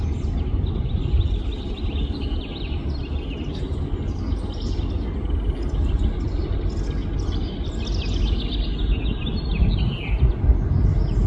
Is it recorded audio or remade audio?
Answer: recorded